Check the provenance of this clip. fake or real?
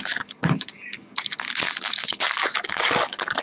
fake